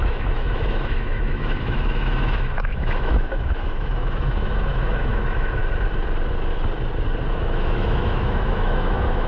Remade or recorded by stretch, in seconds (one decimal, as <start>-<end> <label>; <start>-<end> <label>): 0.0-5.6 remade; 5.6-7.3 recorded; 7.3-9.3 remade